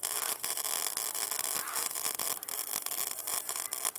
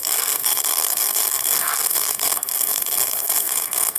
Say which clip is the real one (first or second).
first